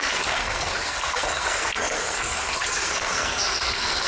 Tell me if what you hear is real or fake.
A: fake